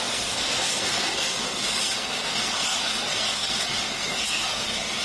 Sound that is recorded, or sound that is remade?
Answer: remade